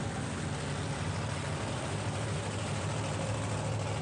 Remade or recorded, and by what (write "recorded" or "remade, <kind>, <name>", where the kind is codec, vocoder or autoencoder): recorded